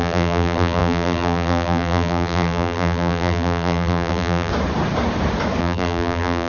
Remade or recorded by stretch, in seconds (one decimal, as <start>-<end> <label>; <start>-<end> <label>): 0.0-4.5 remade; 4.5-5.6 recorded; 5.6-6.5 remade